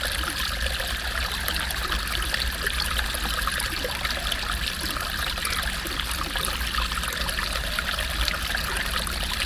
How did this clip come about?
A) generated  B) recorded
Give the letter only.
B